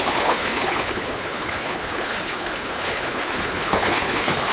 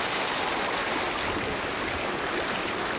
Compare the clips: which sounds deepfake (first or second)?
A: first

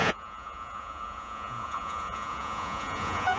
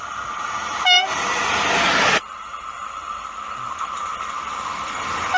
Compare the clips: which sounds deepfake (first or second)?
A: first